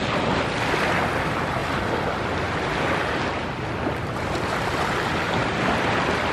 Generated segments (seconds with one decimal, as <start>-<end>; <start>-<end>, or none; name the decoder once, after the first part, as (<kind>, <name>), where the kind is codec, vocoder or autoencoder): none